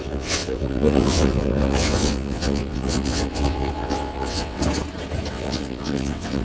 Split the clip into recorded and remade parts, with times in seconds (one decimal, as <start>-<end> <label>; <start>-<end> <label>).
0.0-4.6 remade; 4.6-5.3 recorded; 5.3-6.4 remade